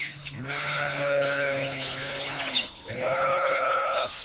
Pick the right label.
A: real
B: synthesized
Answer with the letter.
B